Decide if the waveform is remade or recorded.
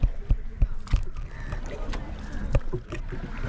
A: recorded